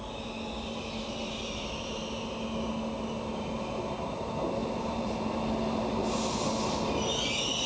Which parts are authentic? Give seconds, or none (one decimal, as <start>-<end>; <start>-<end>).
0.0-4.6; 5.2-7.7